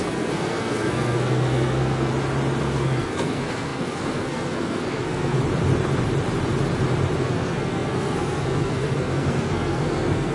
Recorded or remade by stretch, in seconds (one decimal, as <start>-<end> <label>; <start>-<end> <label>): 0.0-2.1 remade; 2.1-2.6 recorded; 2.6-5.4 remade; 5.4-7.2 recorded; 7.2-10.3 remade